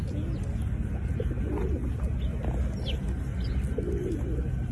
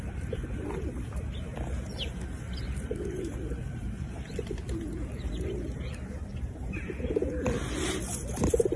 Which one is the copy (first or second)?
second